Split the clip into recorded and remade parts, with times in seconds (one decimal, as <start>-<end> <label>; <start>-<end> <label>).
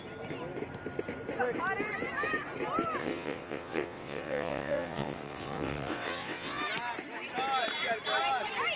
0.0-3.0 recorded; 3.0-6.6 remade; 6.6-8.8 recorded